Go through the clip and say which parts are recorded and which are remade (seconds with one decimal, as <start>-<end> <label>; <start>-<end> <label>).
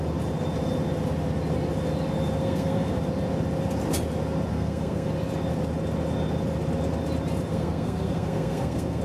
0.0-2.4 recorded; 2.4-3.0 remade; 3.0-4.5 recorded; 4.5-5.1 remade; 5.1-7.5 recorded; 7.5-9.0 remade